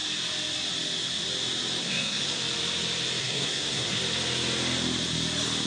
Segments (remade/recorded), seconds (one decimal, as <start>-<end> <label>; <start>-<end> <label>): 0.0-1.8 recorded; 1.8-2.4 remade; 2.4-3.2 recorded; 3.2-4.0 remade; 4.0-5.7 recorded

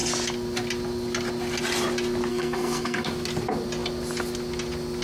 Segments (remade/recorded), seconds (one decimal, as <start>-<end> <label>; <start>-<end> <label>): 0.0-2.3 recorded; 2.3-3.1 remade; 3.1-5.0 recorded

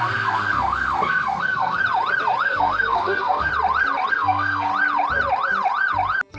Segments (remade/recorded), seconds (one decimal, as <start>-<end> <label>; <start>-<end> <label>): 0.0-1.8 remade; 1.8-2.4 recorded; 2.4-3.5 remade; 3.5-4.1 recorded; 4.1-4.7 remade; 4.7-6.4 recorded

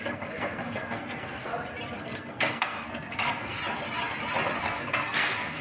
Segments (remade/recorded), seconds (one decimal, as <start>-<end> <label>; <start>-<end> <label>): 0.0-1.5 remade; 1.5-2.0 recorded; 2.0-3.6 remade; 3.6-4.6 recorded; 4.6-5.6 remade

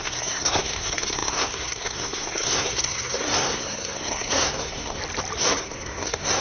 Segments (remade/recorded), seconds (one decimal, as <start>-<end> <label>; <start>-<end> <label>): 0.0-5.0 remade; 5.0-5.6 recorded; 5.6-6.4 remade

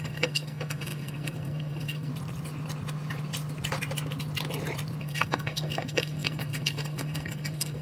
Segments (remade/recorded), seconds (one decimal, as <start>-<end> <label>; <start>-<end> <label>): 0.0-2.1 remade; 2.1-5.0 recorded; 5.0-7.8 remade